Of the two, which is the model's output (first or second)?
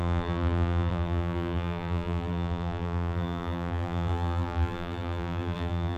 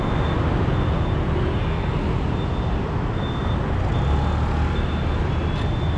first